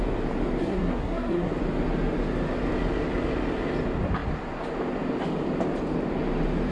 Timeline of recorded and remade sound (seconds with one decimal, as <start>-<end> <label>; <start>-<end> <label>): 0.0-0.6 recorded; 0.6-1.5 remade; 1.5-6.7 recorded